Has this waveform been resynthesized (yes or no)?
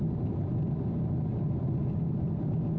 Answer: no